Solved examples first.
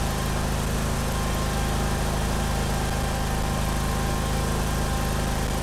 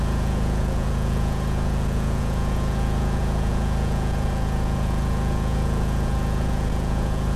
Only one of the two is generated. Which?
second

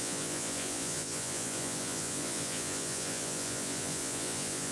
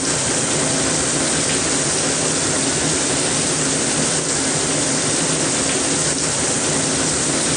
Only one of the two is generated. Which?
first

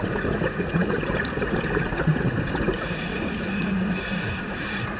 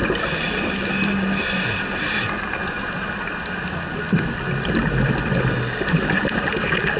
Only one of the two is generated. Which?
first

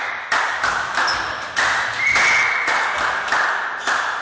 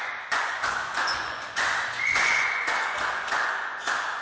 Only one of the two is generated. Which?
second